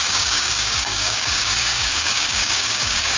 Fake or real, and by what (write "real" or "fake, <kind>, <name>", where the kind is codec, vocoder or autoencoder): fake, codec, DAC